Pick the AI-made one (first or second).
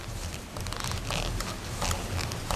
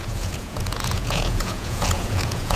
second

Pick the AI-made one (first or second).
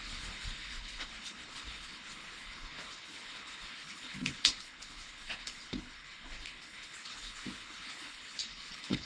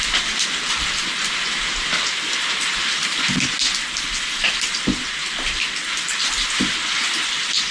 first